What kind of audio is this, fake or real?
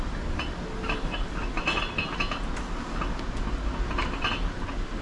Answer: real